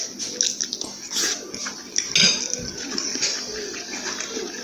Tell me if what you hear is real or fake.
real